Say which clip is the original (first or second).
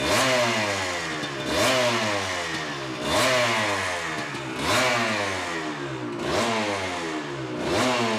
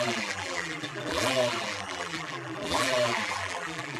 first